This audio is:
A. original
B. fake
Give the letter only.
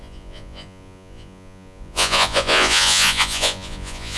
B